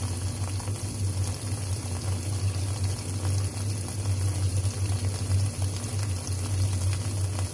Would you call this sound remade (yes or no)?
no